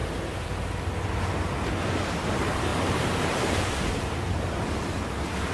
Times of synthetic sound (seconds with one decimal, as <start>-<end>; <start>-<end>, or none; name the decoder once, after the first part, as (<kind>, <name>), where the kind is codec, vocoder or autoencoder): 0.0-0.6 (vocoder, BigVGAN v2); 2.7-5.0